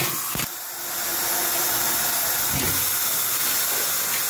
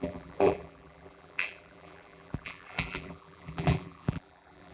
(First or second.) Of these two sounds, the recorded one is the first